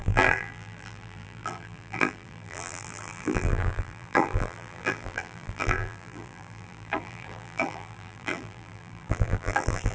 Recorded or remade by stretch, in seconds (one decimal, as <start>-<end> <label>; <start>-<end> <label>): 0.0-9.9 remade